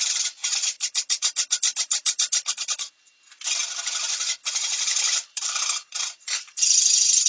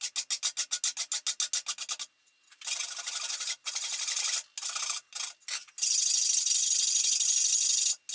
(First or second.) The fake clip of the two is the first